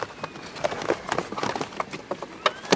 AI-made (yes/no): no